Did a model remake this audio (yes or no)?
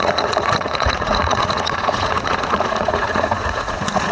yes